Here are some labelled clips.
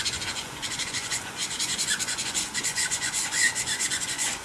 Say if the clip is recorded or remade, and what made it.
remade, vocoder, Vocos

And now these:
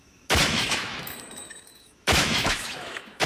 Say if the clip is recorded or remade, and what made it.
remade, autoencoder, DAC-VAE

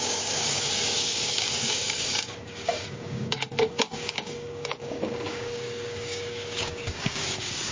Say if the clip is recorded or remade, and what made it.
remade, codec, DAC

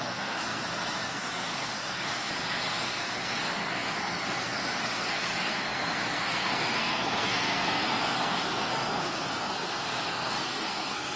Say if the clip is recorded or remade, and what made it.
remade, codec, SNAC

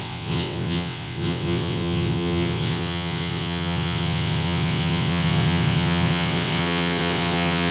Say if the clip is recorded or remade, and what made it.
remade, vocoder, WaveNeXt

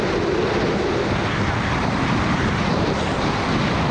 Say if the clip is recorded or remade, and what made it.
recorded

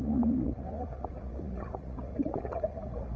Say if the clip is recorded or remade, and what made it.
remade, vocoder, Vocos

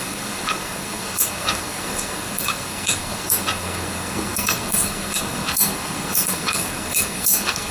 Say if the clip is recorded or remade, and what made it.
remade, codec, SNAC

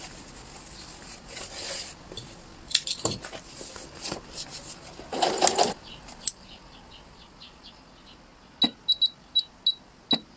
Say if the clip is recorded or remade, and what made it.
recorded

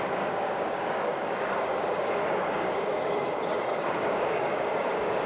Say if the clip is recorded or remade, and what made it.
remade, codec, DAC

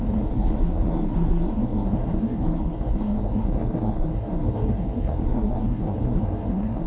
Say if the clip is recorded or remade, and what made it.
remade, codec, SNAC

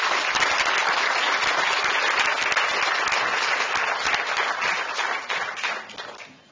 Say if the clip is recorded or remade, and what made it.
recorded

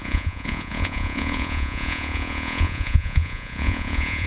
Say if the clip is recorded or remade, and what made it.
remade, vocoder, Vocos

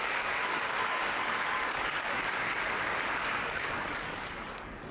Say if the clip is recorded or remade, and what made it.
remade, codec, DAC